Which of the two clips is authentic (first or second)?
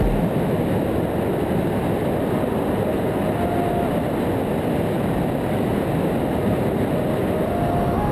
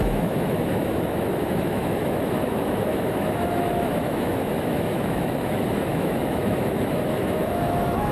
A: first